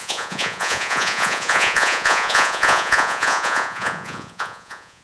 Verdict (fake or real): fake